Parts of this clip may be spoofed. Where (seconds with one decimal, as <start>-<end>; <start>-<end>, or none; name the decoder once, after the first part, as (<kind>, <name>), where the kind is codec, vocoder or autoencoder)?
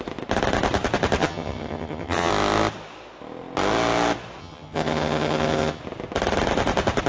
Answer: 1.2-2.3 (vocoder, HiFi-GAN); 4.4-5.8